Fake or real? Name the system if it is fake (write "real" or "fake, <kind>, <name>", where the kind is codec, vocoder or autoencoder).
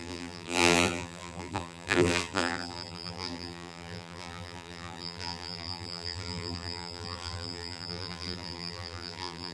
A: fake, vocoder, BigVGAN v2